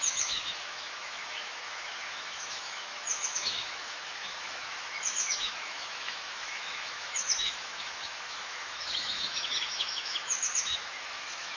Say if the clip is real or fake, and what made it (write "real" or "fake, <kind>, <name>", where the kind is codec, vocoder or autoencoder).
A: fake, autoencoder, DAC-VAE